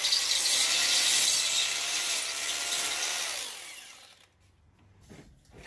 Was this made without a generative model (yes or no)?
yes